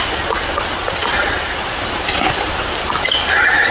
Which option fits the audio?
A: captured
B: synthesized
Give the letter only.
A